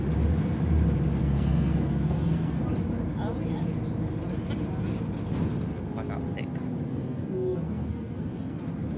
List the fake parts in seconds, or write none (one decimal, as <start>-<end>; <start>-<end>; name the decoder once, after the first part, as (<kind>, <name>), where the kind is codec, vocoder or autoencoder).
1.2-2.6 (codec, SNAC); 6.9-8.6